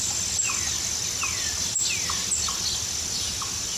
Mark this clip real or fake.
real